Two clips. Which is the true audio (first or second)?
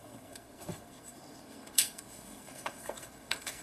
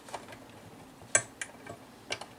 second